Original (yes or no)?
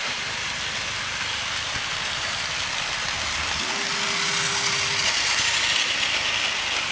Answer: yes